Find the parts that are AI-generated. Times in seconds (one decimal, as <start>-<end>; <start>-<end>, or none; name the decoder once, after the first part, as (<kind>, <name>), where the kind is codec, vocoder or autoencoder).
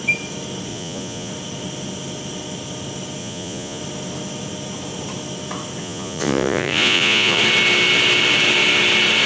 0.7-1.3 (vocoder, Vocos); 3.2-3.8; 5.8-7.4